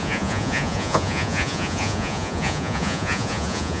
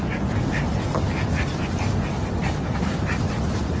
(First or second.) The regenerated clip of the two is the first